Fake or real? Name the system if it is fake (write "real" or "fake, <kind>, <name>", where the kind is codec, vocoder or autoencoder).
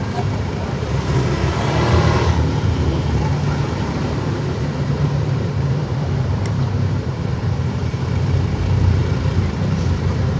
fake, vocoder, BigVGAN v2